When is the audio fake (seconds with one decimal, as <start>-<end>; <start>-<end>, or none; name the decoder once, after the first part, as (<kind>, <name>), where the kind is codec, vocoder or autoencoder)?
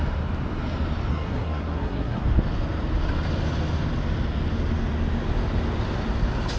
1.1-2.2 (codec, SNAC)